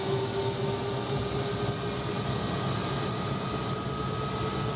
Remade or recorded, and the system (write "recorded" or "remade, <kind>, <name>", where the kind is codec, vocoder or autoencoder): recorded